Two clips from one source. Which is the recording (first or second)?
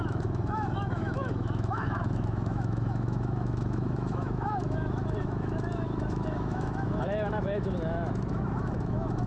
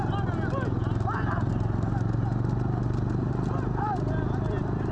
second